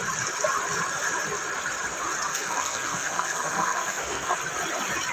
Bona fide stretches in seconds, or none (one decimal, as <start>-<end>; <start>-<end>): 0.0-2.3; 4.4-5.1